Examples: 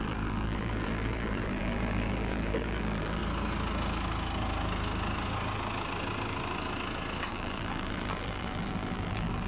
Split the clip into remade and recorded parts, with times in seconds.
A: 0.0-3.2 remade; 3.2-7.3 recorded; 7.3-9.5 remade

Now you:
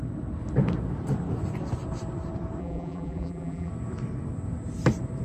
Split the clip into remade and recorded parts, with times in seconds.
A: 0.0-2.6 recorded; 2.6-3.7 remade; 3.7-5.2 recorded

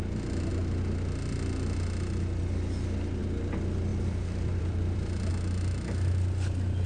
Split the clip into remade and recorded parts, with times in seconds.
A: 0.0-3.9 recorded; 3.9-5.3 remade; 5.3-6.9 recorded

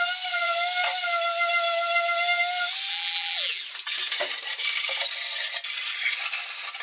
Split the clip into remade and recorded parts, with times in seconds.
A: 0.0-2.9 recorded; 2.9-3.6 remade; 3.6-6.8 recorded

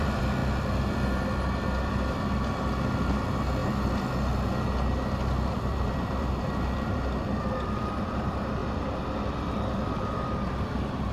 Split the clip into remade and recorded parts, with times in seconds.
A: 0.0-0.4 remade; 0.4-1.9 recorded; 1.9-3.6 remade; 3.6-5.5 recorded; 5.5-8.6 remade; 8.6-9.9 recorded; 9.9-11.1 remade

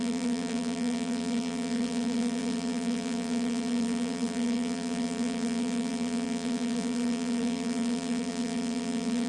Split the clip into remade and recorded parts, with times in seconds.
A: 0.0-9.3 remade

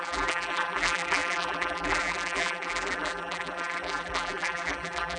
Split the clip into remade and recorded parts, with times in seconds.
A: 0.0-5.2 remade